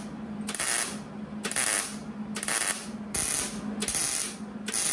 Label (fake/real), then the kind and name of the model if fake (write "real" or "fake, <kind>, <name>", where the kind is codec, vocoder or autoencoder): real